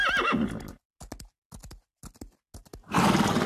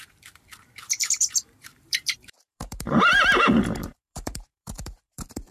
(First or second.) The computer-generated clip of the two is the second